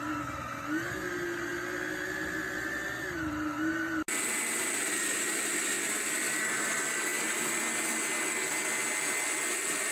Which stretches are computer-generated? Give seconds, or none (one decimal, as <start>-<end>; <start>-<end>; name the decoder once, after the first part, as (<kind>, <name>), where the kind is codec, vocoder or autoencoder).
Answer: none

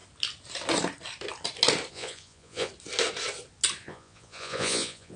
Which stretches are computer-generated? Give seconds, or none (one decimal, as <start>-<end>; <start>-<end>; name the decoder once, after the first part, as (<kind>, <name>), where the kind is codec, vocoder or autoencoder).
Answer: 1.9-2.7 (vocoder, Vocos); 3.8-5.2

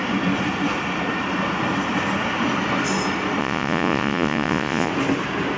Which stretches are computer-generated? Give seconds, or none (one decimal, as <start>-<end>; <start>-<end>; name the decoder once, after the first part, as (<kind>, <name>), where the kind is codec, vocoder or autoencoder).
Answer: 3.4-4.9 (vocoder, Vocos)

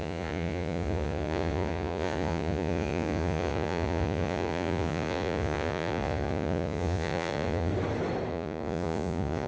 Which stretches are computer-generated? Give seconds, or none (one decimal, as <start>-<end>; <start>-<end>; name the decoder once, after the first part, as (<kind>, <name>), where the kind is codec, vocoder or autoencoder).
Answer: 0.0-7.7 (vocoder, Vocos); 8.3-9.5